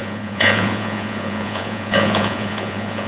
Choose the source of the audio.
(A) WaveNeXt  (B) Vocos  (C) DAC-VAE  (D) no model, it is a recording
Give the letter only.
B